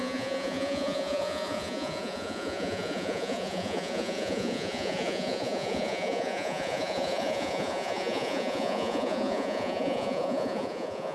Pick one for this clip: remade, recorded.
remade